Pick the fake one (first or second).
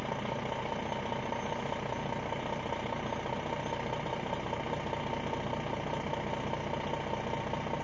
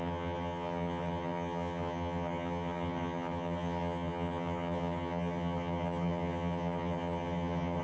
second